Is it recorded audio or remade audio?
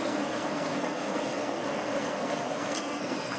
remade